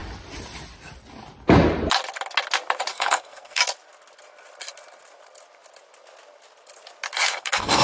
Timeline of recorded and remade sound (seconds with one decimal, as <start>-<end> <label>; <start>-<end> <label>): 0.0-2.9 recorded; 2.9-3.6 remade; 3.6-7.2 recorded; 7.2-7.8 remade